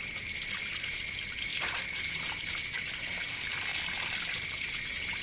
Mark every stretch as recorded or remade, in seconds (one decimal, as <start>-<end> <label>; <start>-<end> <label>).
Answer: 0.0-5.2 recorded